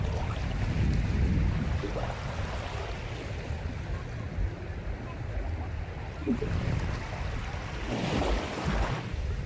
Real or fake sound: real